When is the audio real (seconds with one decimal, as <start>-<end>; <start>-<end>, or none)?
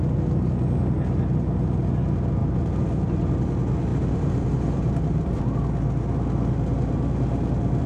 0.0-2.4; 3.0-3.9; 5.4-7.9